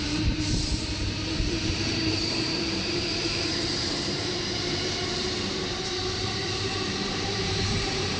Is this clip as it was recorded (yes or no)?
no